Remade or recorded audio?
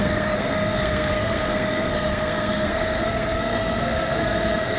remade